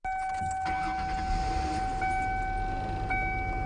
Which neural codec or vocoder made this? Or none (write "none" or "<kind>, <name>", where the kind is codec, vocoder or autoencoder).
none